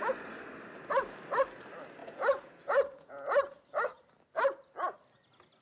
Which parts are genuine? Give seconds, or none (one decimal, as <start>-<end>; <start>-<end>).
0.0-2.0; 3.6-5.6